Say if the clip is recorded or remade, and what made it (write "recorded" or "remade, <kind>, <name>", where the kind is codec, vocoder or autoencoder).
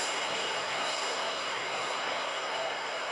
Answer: remade, codec, SNAC